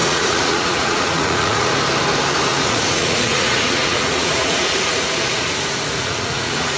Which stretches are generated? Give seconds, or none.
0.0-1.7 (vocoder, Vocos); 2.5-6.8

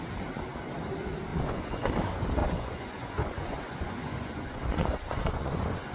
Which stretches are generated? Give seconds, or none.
1.3-1.9 (vocoder, Vocos); 2.4-5.9

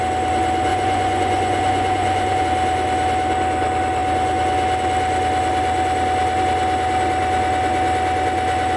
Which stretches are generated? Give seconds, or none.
0.7-2.4 (vocoder, Vocos)

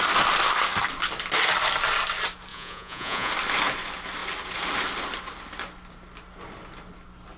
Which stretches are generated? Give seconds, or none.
2.5-3.3 (vocoder, Vocos)

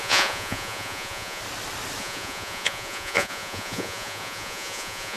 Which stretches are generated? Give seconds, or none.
0.0-1.4 (vocoder, Vocos); 2.0-5.2

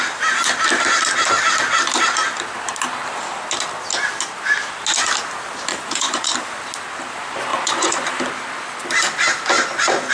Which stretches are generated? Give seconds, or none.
5.7-6.3 (vocoder, Vocos); 7.5-8.1

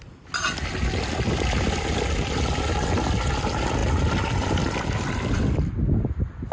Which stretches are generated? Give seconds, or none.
none

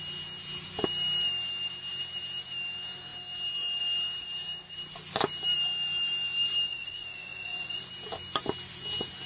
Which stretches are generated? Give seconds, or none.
6.7-7.9 (vocoder, Vocos)